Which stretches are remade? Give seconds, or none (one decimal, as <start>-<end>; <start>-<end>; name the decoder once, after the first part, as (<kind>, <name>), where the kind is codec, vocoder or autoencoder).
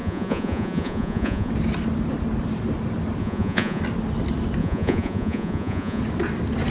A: 0.0-1.5 (vocoder, Vocos); 3.2-3.8; 4.6-6.0